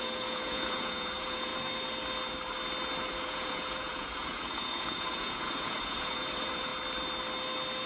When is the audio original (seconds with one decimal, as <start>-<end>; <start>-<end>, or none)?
1.5-3.2; 6.7-7.9